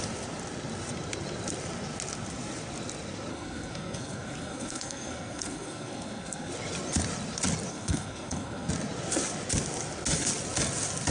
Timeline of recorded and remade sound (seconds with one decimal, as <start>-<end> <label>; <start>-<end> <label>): 0.0-3.3 recorded; 3.3-6.5 remade; 6.5-7.7 recorded; 7.7-8.7 remade; 8.7-11.1 recorded